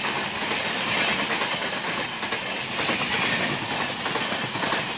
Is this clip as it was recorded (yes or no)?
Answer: yes